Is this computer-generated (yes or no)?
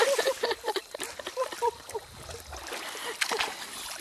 no